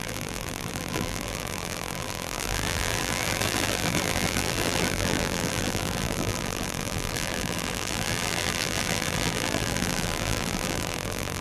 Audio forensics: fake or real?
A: fake